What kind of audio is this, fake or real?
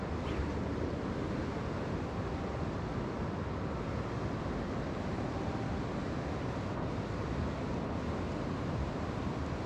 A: real